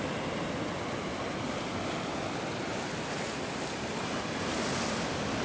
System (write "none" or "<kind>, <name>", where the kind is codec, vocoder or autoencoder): none